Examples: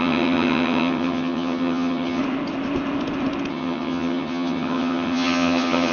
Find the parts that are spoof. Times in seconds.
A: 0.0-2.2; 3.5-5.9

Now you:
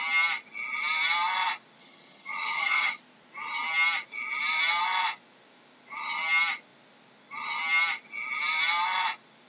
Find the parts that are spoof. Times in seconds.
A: 1.8-3.0

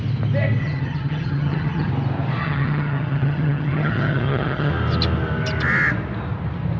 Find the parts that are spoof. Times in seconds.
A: 0.6-1.9; 2.4-4.7

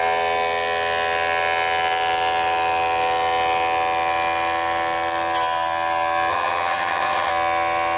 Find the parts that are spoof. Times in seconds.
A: 6.3-7.3